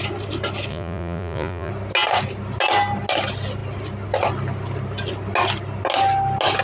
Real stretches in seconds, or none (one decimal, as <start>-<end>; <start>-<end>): 0.0-0.7; 1.7-6.6